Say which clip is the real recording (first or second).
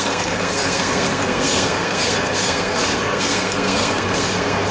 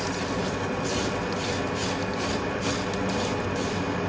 second